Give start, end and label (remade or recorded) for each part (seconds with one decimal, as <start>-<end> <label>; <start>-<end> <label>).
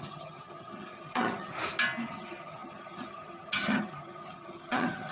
0.0-1.5 remade; 1.5-2.1 recorded; 2.1-5.1 remade